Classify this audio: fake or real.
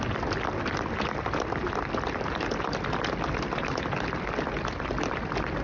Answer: real